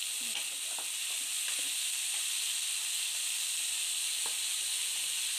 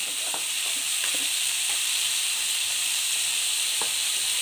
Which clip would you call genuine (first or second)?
first